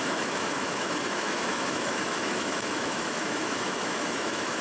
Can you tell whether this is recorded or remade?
remade